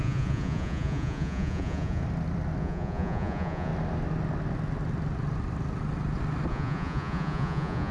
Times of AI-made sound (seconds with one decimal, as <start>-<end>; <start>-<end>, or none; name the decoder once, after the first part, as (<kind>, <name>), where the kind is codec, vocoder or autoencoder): 0.0-2.0 (vocoder, Vocos); 2.6-3.7; 6.5-7.9